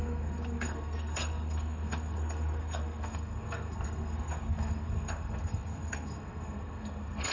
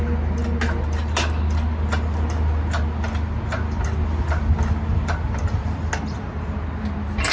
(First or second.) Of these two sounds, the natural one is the second